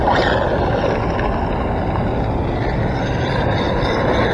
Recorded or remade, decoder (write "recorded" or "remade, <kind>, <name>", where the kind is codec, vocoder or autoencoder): recorded